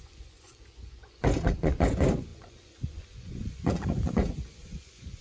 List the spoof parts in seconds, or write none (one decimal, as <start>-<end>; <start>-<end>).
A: 0.0-5.2